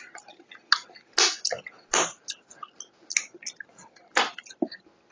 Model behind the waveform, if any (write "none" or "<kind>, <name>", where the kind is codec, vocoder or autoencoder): none